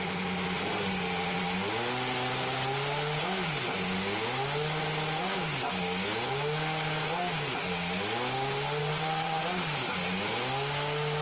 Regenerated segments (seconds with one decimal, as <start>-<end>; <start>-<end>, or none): 8.8-9.4

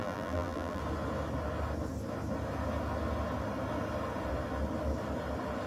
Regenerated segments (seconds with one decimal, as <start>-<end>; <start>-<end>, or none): 0.0-0.8

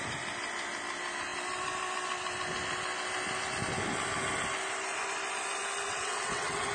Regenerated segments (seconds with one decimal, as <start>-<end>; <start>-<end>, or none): 5.9-6.7

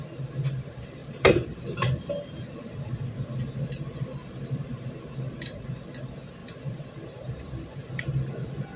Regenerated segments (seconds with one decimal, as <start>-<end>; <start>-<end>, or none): 1.0-2.1; 6.4-7.9

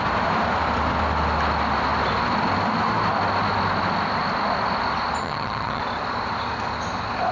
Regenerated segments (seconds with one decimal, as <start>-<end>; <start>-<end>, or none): 5.2-5.8

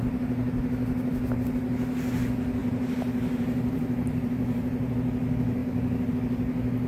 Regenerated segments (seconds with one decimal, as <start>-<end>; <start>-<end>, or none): 2.6-4.9